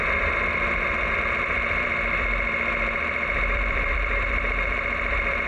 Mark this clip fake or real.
fake